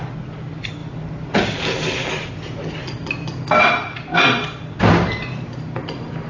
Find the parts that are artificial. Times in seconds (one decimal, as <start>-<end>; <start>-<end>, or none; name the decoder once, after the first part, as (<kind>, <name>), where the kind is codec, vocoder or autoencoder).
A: none